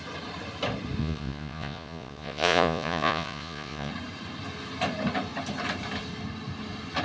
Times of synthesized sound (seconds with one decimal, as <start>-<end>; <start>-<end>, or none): 1.0-3.9